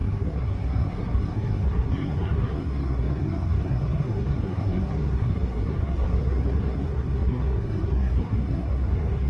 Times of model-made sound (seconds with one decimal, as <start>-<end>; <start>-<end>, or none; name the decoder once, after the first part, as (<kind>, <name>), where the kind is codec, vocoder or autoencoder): 0.0-9.3 (codec, SNAC)